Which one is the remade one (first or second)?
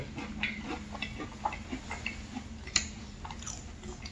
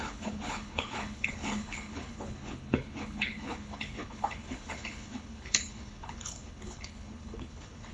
second